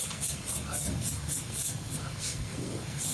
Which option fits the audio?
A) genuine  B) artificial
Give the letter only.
B